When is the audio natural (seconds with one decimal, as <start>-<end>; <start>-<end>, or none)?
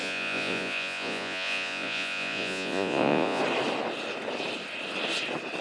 3.4-5.6